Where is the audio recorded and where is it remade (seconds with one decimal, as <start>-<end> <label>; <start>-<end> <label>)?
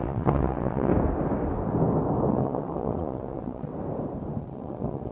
0.0-0.9 remade; 0.9-2.3 recorded; 2.3-3.7 remade; 3.7-4.4 recorded; 4.4-5.1 remade